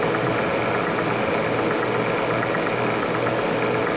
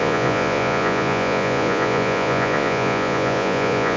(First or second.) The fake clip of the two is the second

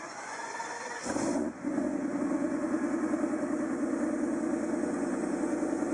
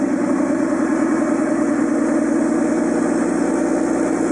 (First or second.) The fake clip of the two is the first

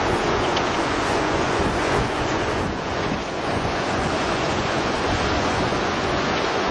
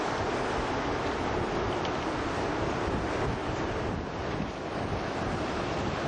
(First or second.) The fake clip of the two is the first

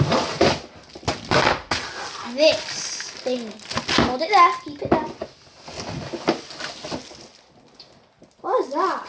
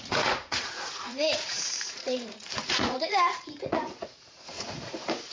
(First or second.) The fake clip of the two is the second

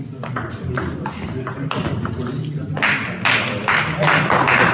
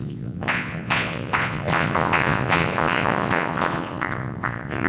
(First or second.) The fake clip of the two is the second